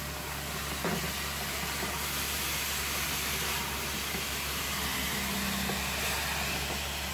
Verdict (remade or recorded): recorded